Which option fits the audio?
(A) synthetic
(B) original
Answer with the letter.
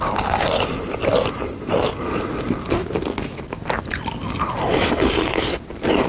B